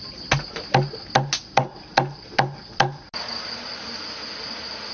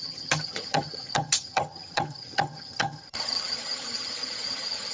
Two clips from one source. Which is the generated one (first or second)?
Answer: second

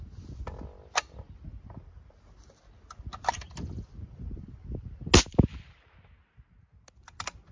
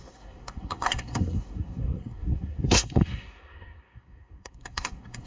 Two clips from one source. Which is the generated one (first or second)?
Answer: second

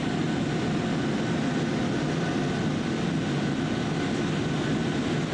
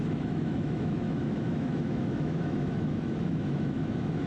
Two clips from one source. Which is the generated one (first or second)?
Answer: second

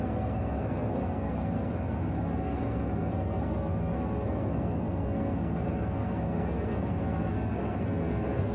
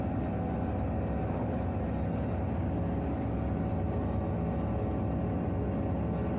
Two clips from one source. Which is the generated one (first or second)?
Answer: first